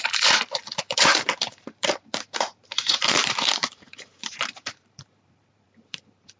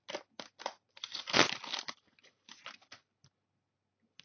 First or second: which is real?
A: second